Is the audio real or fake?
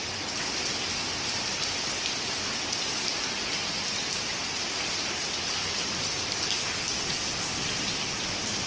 real